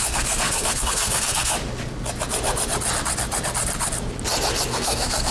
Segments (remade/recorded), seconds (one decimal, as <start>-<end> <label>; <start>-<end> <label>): 0.0-1.5 remade; 1.5-4.7 recorded; 4.7-5.3 remade